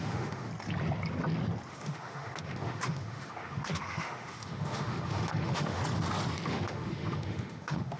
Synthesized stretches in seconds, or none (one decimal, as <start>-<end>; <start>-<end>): 0.0-0.5; 1.7-5.8; 6.5-8.0